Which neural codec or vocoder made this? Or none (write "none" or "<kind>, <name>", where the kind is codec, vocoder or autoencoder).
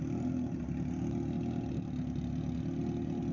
none